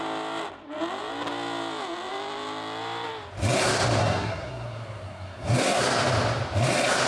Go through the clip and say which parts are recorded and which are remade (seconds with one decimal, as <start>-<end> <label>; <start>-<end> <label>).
0.0-4.0 recorded; 4.0-5.8 remade; 5.8-7.1 recorded